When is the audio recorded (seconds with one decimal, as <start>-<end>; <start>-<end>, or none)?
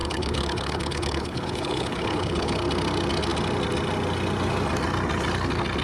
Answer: 2.6-5.8